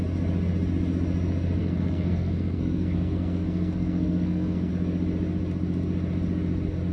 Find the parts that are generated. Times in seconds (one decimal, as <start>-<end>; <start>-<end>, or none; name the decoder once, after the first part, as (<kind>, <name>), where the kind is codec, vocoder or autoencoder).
1.6-4.7 (codec, SNAC)